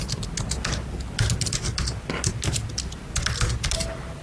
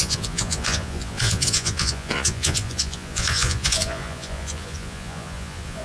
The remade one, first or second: second